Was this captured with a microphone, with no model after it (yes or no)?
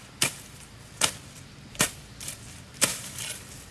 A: no